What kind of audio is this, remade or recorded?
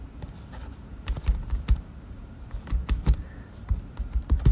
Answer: remade